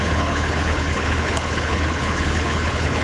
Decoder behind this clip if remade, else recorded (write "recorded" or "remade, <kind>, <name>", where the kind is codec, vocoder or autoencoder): remade, codec, HILCodec